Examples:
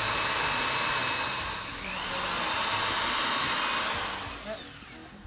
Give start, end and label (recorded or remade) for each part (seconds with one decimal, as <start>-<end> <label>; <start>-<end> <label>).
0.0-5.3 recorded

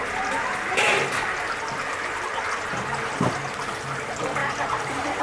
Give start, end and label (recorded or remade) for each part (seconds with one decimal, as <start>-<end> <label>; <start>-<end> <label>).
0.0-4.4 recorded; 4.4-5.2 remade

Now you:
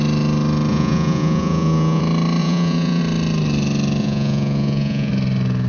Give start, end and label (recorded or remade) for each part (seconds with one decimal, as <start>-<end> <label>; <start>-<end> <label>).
0.0-0.7 recorded; 0.7-2.0 remade; 2.0-2.4 recorded; 2.4-3.0 remade; 3.0-4.0 recorded; 4.0-5.1 remade; 5.1-5.7 recorded

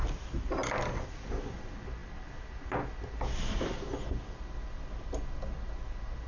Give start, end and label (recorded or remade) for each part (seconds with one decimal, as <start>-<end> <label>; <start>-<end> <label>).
0.0-6.3 recorded

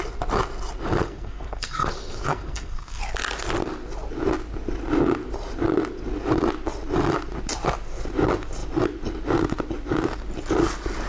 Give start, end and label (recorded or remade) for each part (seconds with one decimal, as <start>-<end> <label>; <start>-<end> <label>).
0.0-1.0 recorded; 1.0-3.0 remade; 3.0-11.1 recorded